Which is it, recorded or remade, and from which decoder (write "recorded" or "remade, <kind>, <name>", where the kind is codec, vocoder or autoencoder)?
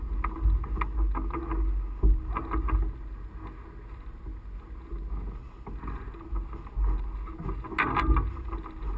recorded